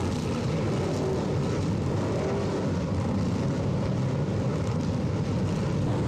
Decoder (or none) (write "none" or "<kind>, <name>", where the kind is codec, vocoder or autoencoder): none